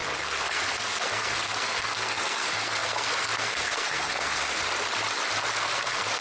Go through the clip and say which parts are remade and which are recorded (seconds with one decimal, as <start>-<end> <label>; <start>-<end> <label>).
0.0-4.6 remade; 4.6-5.5 recorded; 5.5-6.2 remade